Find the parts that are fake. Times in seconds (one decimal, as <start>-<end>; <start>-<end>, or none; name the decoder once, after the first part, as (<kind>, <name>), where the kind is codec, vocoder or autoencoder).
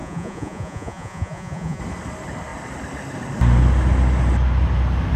0.0-1.8 (vocoder, Vocos)